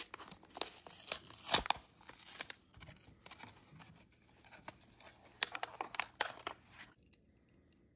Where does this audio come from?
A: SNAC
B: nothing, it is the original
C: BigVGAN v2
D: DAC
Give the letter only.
B